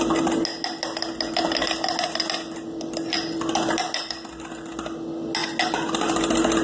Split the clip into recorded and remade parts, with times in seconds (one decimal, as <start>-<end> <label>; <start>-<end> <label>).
0.0-6.6 recorded